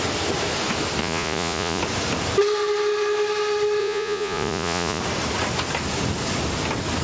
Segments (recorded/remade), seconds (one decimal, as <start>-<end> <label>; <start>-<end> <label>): 0.0-1.0 recorded; 1.0-1.8 remade; 1.8-3.8 recorded; 3.8-5.0 remade; 5.0-7.0 recorded